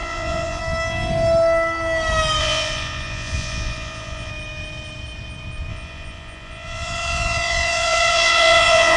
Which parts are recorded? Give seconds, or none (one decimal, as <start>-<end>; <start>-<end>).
0.6-2.4; 4.3-5.7

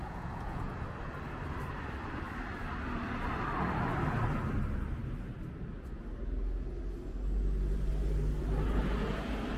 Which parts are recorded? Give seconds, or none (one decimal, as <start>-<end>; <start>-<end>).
0.8-9.6

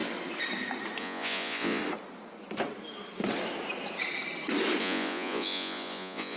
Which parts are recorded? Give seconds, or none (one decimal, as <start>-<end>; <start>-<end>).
0.0-1.0; 1.8-4.8

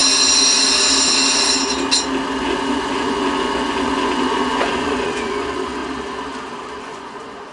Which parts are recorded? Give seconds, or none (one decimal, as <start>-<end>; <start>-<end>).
0.0-2.4; 5.8-6.8